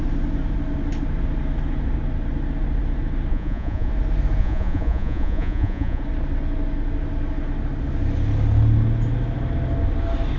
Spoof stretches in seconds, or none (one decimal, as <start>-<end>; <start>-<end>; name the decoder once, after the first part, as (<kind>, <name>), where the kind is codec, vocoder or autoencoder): 3.3-3.9 (vocoder, Vocos); 4.4-6.0